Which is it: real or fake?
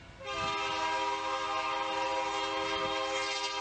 real